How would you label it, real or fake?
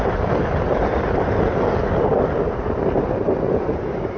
real